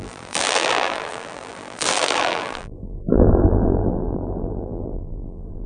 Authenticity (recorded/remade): remade